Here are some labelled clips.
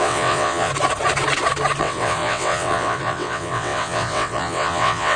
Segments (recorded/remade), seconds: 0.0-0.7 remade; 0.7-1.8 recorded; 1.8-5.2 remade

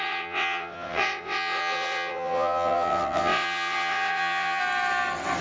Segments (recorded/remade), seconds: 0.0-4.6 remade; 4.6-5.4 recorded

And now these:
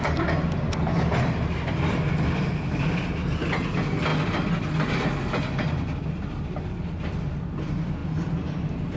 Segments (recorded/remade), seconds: 0.0-9.0 recorded

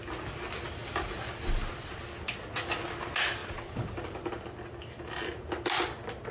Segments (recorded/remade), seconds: 0.0-3.4 recorded; 3.4-4.3 remade; 4.3-6.3 recorded

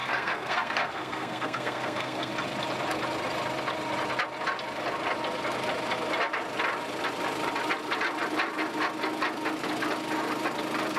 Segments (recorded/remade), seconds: 0.0-2.3 remade; 2.3-11.0 recorded